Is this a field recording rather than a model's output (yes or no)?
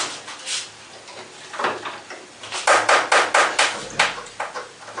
yes